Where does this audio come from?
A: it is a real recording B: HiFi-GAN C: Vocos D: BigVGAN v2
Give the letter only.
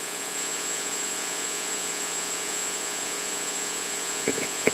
C